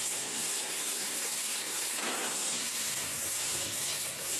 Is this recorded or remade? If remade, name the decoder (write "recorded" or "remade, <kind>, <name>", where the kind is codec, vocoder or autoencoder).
remade, codec, SNAC